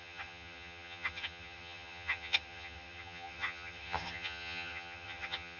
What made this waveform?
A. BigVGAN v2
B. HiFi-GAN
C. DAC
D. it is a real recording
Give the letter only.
B